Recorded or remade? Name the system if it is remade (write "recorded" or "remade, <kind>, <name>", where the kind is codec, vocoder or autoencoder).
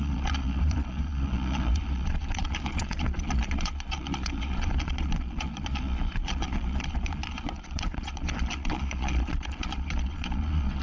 remade, vocoder, Vocos